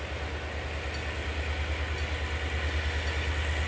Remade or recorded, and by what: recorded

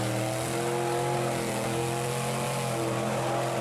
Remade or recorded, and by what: recorded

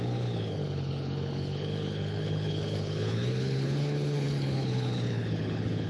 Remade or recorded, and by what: remade, codec, HILCodec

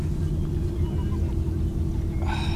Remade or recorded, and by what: recorded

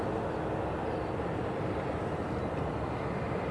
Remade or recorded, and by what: recorded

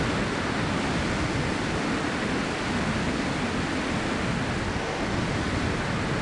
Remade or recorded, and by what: recorded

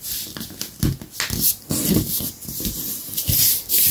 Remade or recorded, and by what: recorded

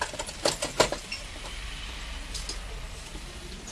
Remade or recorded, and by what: recorded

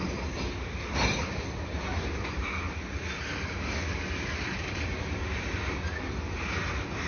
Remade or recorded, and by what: recorded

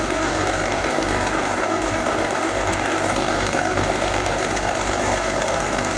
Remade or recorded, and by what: remade, codec, DAC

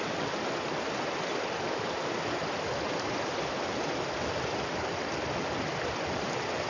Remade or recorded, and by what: recorded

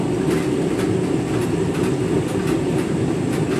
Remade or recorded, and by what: recorded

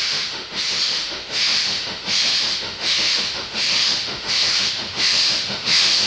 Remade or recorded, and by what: remade, autoencoder, DAC-VAE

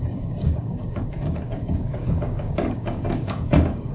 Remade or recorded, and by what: remade, codec, DAC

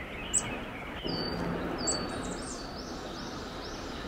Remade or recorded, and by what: recorded